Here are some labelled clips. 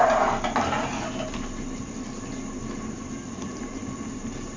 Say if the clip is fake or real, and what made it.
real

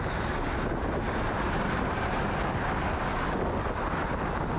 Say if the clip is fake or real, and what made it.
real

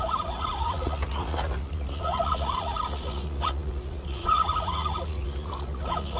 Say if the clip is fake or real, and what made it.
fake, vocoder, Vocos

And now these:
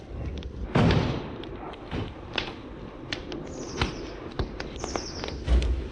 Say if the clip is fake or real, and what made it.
real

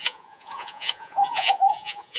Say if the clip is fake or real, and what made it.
fake, vocoder, Vocos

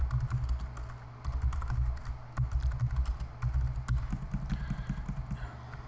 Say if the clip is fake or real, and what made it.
real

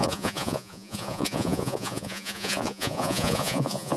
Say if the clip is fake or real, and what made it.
fake, vocoder, Vocos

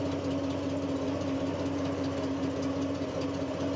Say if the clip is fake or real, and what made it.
real